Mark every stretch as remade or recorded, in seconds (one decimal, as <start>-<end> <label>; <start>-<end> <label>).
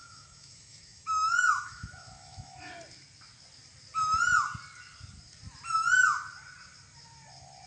0.0-2.7 remade; 2.7-7.7 recorded